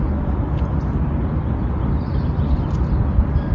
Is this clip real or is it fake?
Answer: real